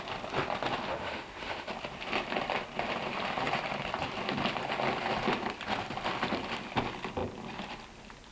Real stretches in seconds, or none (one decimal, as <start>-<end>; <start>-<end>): 0.0-0.9; 1.7-8.3